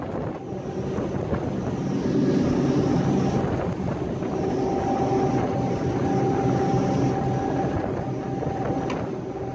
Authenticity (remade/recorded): recorded